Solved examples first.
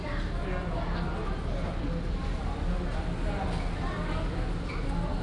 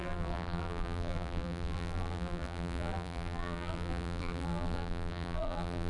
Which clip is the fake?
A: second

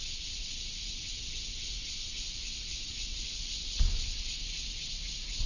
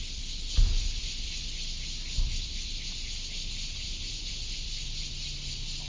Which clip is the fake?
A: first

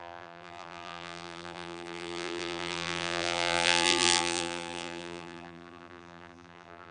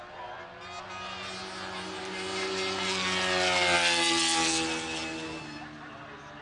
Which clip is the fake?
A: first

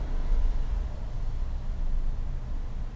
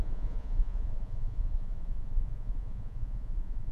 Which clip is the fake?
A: second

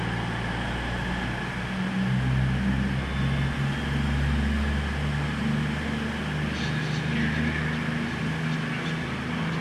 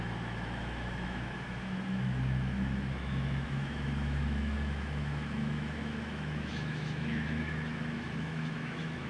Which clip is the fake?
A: second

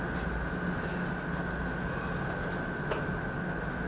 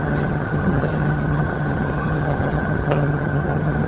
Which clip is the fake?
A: second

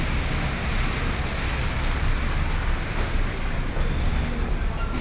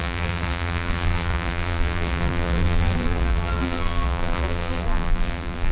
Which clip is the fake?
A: second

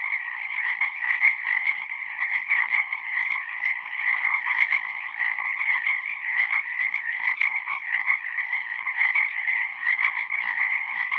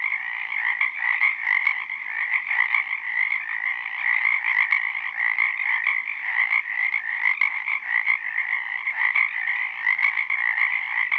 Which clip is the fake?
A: first